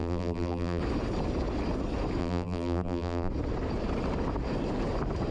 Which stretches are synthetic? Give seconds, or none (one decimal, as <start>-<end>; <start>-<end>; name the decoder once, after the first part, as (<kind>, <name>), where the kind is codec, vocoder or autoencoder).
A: 0.0-0.8 (vocoder, BigVGAN v2); 2.2-3.3